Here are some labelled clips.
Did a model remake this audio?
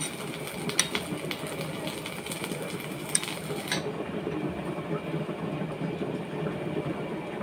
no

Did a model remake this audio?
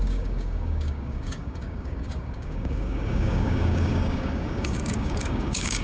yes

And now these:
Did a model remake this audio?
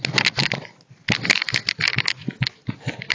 no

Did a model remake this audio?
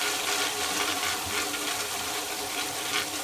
yes